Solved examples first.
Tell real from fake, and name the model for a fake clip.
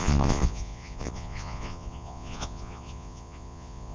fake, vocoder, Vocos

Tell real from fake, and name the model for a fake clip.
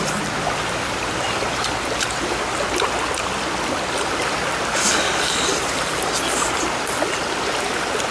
real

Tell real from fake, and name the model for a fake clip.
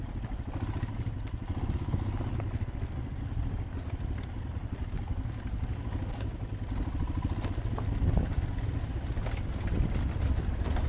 real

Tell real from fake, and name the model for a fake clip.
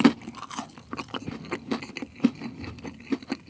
real